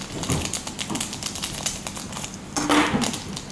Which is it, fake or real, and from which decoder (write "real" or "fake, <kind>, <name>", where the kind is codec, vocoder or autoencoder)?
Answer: real